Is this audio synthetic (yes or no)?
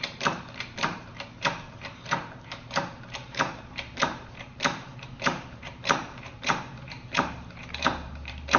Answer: yes